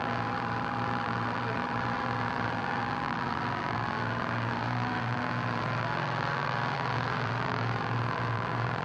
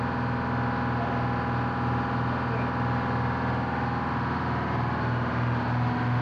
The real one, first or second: second